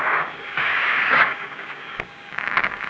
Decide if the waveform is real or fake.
fake